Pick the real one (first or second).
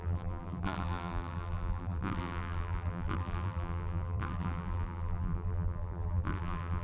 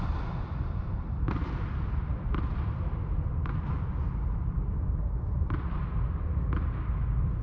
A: second